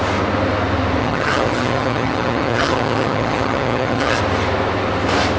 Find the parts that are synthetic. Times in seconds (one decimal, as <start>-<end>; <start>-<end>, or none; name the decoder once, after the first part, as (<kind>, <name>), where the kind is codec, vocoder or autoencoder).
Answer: 1.0-4.2 (vocoder, HiFi-GAN)